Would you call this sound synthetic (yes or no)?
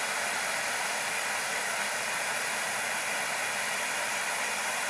no